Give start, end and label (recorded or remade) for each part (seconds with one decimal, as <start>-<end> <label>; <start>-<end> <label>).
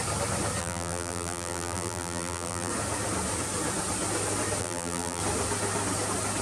0.0-0.6 recorded; 0.6-2.7 remade; 2.7-4.6 recorded; 4.6-5.2 remade; 5.2-6.4 recorded